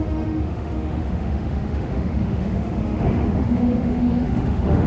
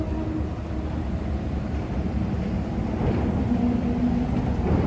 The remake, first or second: first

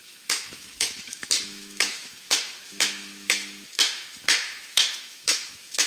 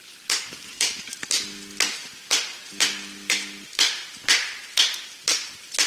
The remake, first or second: first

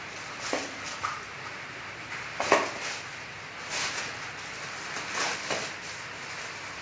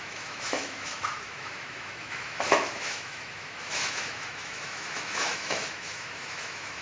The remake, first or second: second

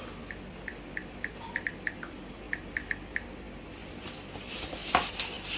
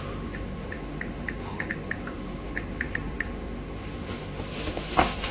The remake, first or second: second